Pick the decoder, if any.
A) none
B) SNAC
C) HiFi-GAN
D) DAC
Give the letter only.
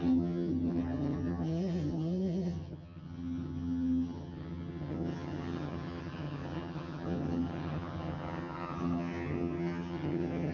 C